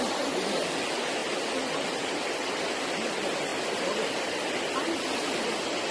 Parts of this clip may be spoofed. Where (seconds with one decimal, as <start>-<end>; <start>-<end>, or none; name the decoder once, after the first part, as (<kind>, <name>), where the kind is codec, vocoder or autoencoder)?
3.5-4.3 (vocoder, BigVGAN v2)